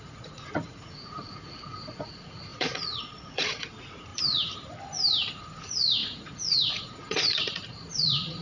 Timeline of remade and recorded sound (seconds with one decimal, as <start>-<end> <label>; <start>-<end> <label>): 0.0-4.1 remade; 4.1-5.3 recorded; 5.3-8.4 remade